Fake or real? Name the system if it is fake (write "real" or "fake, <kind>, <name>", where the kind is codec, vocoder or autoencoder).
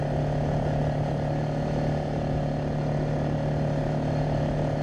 real